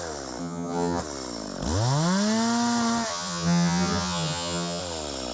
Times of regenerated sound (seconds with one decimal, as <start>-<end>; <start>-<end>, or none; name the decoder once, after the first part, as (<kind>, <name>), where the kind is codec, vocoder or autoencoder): 0.4-1.0 (vocoder, HiFi-GAN); 3.1-4.8